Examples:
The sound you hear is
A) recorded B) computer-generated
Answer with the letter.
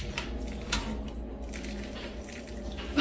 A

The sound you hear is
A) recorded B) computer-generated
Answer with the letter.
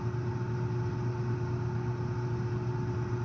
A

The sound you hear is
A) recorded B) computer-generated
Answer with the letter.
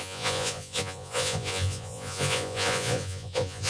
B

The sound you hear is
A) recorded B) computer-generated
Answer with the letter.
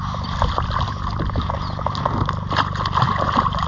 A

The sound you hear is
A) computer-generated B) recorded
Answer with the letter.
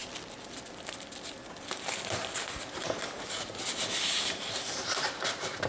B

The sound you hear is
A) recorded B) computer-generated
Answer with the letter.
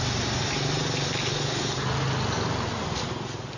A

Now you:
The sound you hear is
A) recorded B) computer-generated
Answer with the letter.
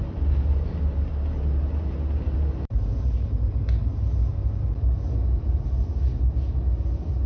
A